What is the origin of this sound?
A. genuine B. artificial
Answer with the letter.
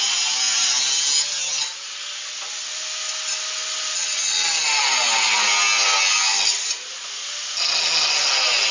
A